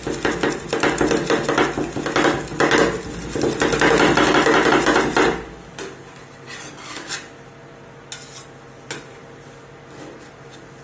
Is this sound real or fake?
real